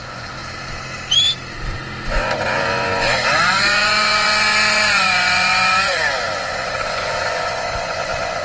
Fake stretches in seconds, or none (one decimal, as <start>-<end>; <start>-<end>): 0.0-0.4; 2.1-8.4